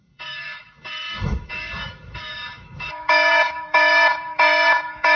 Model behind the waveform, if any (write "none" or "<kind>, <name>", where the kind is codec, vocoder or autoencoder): autoencoder, DAC-VAE